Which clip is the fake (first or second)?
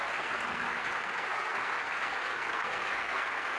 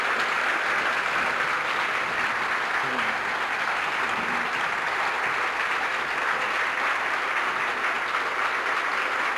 first